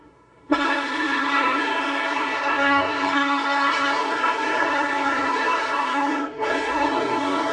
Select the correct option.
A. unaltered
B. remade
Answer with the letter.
B